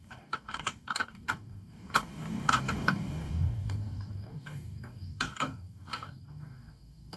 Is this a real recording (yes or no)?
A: no